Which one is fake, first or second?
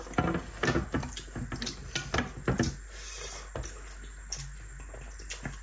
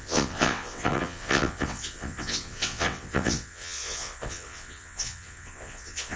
second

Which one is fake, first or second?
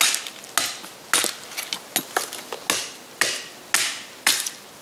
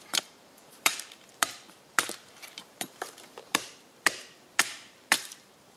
second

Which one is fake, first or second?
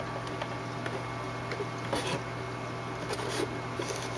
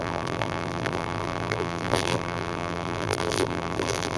second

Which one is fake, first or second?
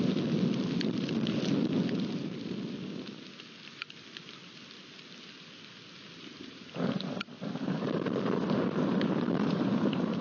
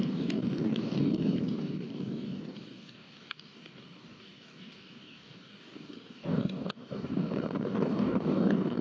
second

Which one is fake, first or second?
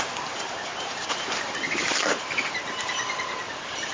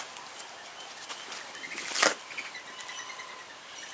first